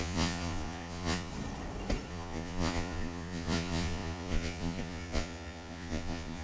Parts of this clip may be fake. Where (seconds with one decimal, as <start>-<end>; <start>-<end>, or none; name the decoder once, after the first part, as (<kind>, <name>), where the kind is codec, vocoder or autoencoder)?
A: 0.0-1.3 (vocoder, Vocos); 2.1-6.4